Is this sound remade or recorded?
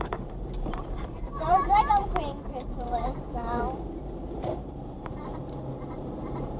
remade